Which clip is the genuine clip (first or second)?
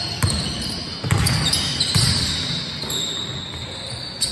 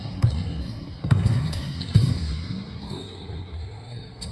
first